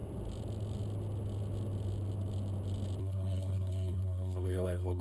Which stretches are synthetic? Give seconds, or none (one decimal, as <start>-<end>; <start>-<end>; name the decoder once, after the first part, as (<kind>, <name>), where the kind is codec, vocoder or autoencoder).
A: 3.0-5.0 (codec, SNAC)